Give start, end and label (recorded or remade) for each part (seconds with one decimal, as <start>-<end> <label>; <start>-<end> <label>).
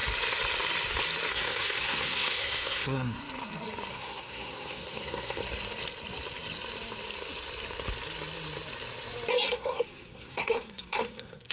0.0-1.3 recorded; 1.3-3.2 remade; 3.2-3.9 recorded; 3.9-5.4 remade; 5.4-9.5 recorded; 9.5-11.5 remade